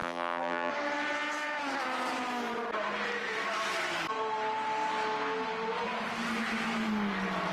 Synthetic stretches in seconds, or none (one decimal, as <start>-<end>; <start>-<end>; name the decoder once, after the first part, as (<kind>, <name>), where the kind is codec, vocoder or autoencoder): 0.0-0.7 (vocoder, BigVGAN v2)